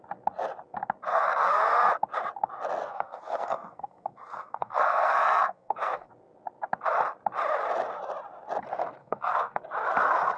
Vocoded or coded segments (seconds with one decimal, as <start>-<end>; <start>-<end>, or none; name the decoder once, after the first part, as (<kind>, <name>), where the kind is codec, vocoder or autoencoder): 1.1-1.6 (codec, SNAC); 2.8-6.1; 9.0-9.6

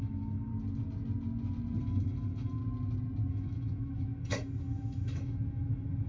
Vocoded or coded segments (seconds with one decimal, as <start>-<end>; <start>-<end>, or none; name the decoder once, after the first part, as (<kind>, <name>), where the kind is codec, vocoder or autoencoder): 0.0-0.5 (autoencoder, DAC-VAE); 1.8-2.6; 3.3-6.1